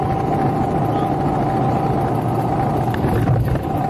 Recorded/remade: recorded